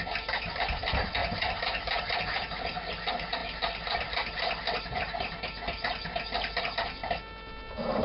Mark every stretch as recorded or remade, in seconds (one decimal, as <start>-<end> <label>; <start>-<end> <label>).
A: 0.0-8.0 recorded